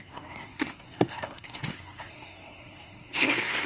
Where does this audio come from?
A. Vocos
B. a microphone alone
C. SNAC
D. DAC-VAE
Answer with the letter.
C